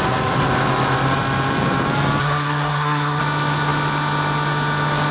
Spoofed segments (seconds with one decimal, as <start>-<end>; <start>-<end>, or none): 2.2-3.2